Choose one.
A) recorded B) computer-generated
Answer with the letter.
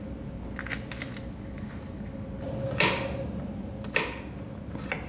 A